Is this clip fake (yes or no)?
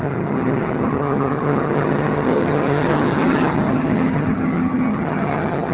yes